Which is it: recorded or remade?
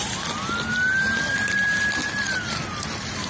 recorded